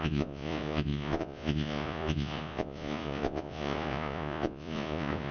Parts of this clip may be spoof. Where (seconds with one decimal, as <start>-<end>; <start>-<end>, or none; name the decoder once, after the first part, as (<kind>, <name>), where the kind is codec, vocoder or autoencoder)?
0.0-5.3 (vocoder, Vocos)